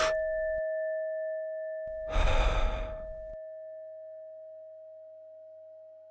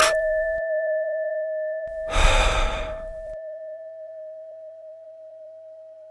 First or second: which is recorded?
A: first